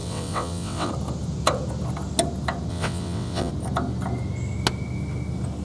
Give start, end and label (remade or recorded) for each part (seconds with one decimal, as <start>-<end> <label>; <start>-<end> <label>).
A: 0.0-0.9 remade; 0.9-2.7 recorded; 2.7-3.5 remade; 3.5-5.6 recorded